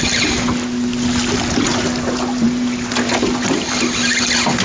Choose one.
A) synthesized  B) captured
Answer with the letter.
B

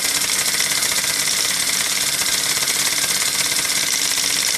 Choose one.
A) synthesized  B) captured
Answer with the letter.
B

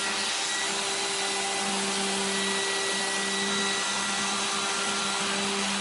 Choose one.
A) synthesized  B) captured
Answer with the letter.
B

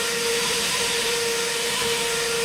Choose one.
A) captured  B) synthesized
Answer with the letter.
B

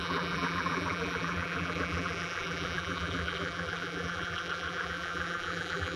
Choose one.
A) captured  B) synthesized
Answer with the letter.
B